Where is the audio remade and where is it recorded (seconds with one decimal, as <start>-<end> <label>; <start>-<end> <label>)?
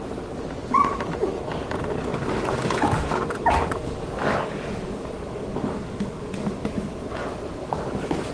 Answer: 0.0-2.1 recorded; 2.1-6.6 remade; 6.6-7.6 recorded; 7.6-8.3 remade